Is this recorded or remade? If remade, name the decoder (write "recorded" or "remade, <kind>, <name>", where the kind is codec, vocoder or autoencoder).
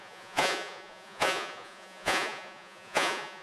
remade, vocoder, Vocos